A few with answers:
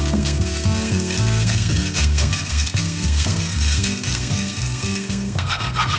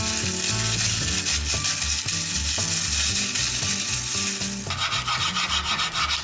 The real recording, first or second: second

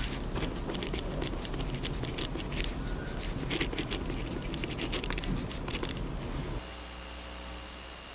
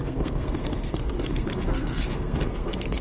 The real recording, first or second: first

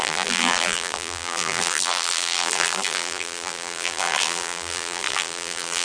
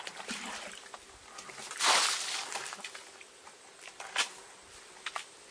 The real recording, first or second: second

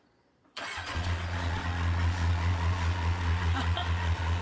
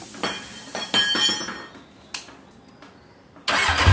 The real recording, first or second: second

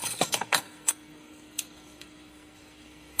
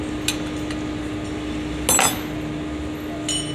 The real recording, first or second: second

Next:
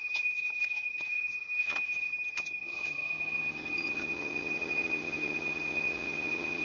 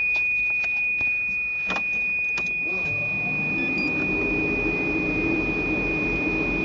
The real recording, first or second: second